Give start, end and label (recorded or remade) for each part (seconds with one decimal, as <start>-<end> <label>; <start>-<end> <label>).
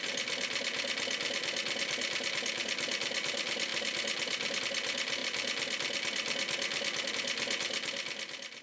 0.0-8.6 recorded